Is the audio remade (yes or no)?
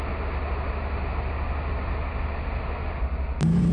no